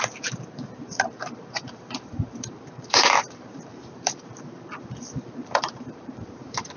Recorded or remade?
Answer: remade